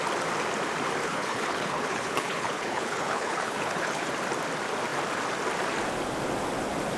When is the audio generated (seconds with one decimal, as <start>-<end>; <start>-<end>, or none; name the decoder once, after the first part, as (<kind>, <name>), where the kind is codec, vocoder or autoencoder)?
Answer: 1.0-4.1 (codec, HILCodec)